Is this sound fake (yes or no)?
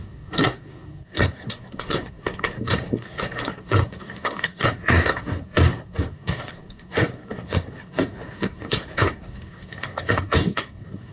yes